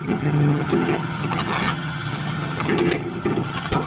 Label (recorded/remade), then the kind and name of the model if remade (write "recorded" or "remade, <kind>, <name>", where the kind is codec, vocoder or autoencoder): remade, vocoder, HiFi-GAN